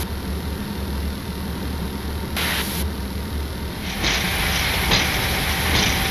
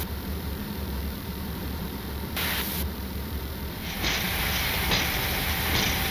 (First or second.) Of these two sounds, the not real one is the second